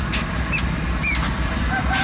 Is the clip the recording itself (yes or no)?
yes